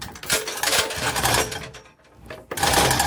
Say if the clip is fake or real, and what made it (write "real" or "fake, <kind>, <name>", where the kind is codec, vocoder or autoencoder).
fake, vocoder, BigVGAN v2